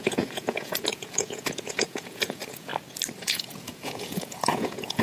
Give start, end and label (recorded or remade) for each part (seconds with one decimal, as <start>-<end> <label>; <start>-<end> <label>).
0.0-2.7 remade; 2.7-3.2 recorded; 3.2-5.0 remade